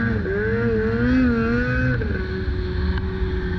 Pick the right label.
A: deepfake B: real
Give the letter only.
B